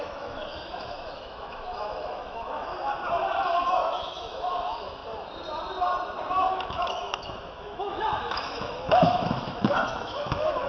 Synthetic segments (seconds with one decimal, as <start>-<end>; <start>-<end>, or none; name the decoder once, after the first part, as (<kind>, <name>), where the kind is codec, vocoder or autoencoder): 0.0-2.7 (autoencoder, DAC-VAE); 3.7-5.0; 6.5-10.7